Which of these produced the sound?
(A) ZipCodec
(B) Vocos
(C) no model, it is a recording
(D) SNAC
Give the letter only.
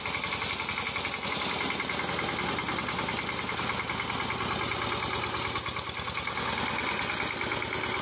C